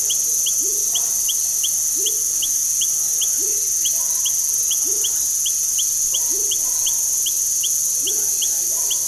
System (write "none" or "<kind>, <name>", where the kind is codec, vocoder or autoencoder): none